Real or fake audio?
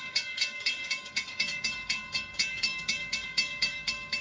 fake